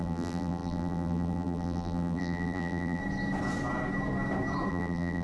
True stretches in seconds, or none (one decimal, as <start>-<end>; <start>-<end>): 3.0-4.7